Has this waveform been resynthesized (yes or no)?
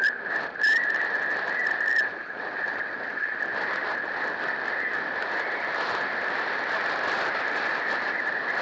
no